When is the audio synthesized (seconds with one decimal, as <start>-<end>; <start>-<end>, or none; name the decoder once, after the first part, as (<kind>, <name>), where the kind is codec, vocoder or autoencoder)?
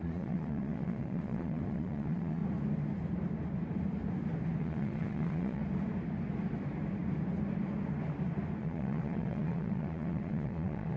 0.0-2.4 (vocoder, Vocos); 4.6-5.6; 8.6-11.0